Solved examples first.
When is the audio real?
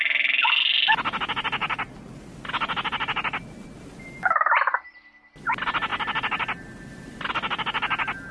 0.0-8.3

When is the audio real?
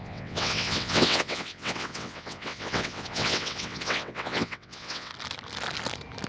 5.1-6.3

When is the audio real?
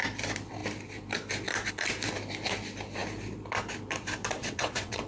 0.0-4.4